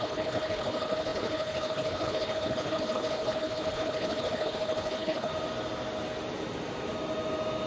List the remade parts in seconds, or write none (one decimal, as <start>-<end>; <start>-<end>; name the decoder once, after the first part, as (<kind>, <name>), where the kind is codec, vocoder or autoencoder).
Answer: 0.0-5.3 (codec, HILCodec)